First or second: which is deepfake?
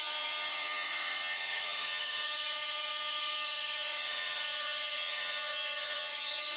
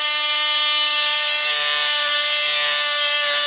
first